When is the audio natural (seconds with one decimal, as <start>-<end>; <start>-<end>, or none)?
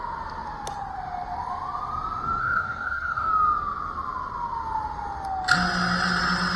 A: 0.0-2.4; 3.3-6.6